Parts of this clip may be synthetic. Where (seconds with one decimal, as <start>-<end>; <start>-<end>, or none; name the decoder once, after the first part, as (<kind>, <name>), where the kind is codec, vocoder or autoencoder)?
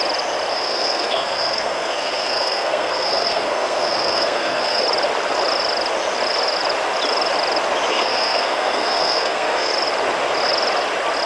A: 0.5-4.8 (codec, SNAC); 7.9-9.7